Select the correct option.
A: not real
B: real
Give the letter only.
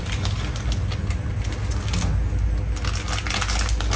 B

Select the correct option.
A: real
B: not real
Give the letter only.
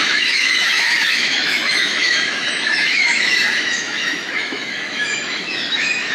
B